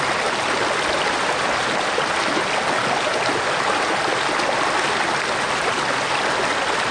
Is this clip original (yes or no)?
yes